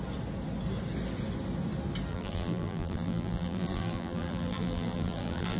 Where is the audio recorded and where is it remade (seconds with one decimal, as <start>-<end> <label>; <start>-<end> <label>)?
0.0-2.1 recorded; 2.1-5.6 remade